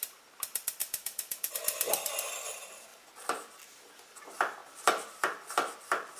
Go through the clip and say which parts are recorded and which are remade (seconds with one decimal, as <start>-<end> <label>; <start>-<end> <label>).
0.0-0.8 recorded; 0.8-1.5 remade; 1.5-6.2 recorded